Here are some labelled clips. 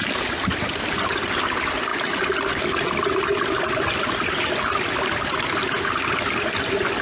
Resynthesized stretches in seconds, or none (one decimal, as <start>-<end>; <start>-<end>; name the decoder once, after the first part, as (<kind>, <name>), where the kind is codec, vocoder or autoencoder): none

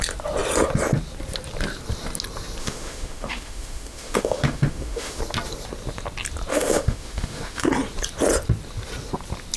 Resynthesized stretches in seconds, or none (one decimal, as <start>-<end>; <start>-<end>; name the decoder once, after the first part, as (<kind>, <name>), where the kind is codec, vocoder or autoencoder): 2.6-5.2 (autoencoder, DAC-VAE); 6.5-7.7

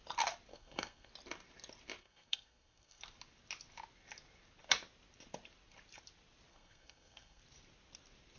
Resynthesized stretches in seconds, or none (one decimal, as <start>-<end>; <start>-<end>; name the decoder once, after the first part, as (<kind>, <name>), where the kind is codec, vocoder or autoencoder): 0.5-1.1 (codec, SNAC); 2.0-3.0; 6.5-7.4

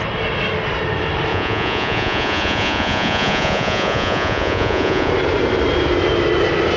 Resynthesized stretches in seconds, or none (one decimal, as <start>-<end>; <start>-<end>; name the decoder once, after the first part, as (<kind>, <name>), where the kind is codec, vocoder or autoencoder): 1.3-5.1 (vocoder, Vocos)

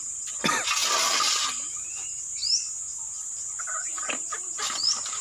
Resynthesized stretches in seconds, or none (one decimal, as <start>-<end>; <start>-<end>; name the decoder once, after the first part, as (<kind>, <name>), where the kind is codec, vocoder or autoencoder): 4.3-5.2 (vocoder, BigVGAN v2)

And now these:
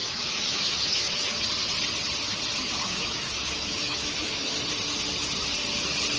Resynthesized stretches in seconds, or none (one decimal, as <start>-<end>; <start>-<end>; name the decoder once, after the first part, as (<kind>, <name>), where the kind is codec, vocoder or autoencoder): 0.0-1.4 (autoencoder, DAC-VAE); 2.8-4.6

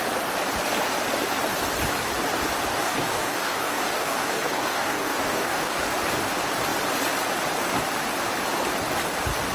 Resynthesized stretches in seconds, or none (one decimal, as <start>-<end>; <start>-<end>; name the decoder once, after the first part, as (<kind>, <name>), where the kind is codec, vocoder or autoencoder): 2.7-5.8 (codec, DAC)